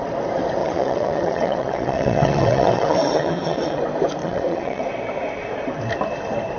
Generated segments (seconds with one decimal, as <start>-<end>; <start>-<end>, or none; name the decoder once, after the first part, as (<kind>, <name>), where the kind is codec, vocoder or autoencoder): 0.6-3.8 (vocoder, WaveNeXt); 4.2-4.8